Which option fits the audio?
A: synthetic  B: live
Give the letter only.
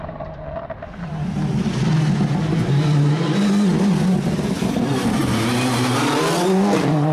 B